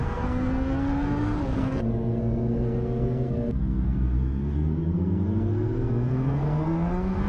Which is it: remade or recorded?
remade